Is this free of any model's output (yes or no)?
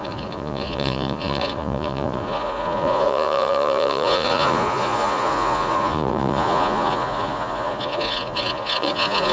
no